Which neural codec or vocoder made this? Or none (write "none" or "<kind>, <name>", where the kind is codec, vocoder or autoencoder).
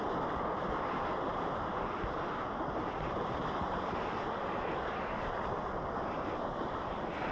vocoder, BigVGAN v2